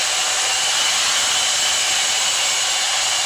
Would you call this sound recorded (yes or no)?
yes